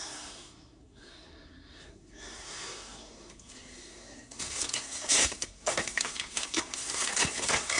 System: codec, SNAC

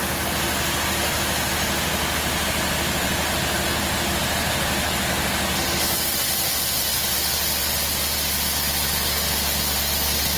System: none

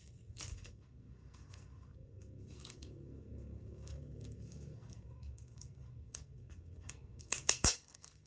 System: codec, SNAC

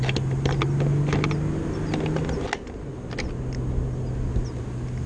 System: none